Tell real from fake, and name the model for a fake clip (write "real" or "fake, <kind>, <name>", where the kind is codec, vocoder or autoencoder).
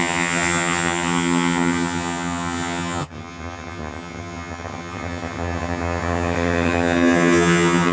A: fake, vocoder, HiFi-GAN